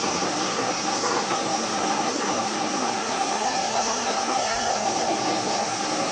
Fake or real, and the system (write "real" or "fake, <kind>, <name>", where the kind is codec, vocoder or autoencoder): fake, codec, SNAC